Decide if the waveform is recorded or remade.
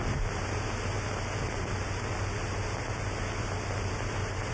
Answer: recorded